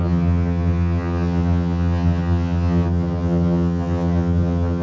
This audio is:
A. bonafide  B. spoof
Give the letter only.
B